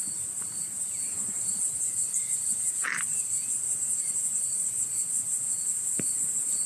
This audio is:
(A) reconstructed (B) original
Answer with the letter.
B